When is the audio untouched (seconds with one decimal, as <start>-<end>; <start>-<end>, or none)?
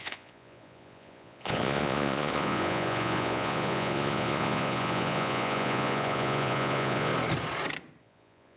7.1-8.0